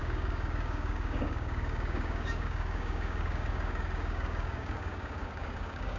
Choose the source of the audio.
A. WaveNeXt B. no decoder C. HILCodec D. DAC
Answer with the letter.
D